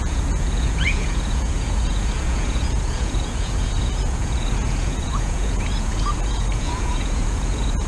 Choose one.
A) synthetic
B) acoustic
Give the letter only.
A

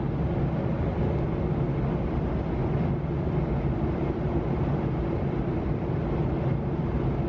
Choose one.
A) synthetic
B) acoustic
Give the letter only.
B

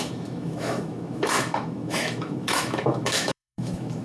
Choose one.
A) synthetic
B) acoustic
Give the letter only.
A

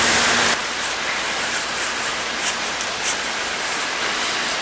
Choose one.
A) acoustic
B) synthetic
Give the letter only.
A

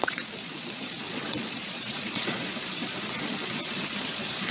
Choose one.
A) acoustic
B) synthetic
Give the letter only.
B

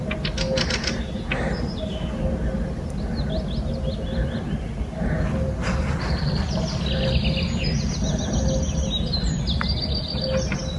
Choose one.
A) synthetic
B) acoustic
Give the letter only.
B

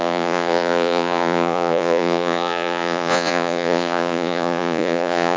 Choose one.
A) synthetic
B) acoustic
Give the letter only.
A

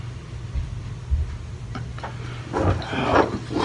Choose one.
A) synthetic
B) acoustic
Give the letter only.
B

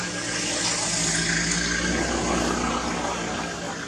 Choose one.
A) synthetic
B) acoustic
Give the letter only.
B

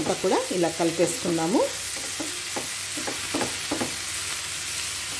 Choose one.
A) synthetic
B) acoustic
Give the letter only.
B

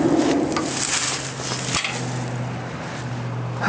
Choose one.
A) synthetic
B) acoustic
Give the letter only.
B